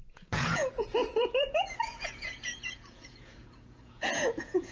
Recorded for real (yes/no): no